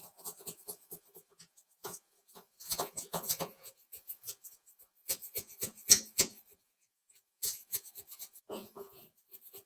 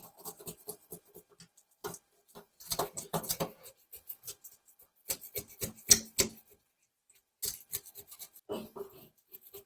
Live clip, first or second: second